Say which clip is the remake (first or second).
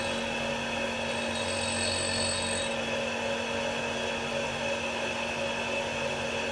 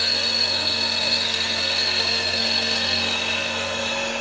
second